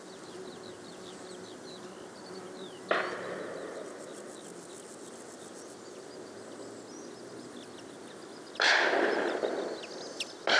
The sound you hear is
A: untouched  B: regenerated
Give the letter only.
A